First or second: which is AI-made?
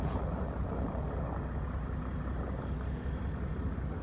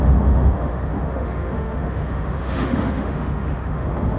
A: second